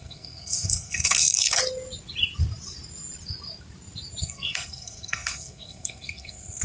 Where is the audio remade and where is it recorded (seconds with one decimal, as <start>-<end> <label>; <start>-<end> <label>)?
0.0-1.6 remade; 1.6-4.2 recorded; 4.2-6.6 remade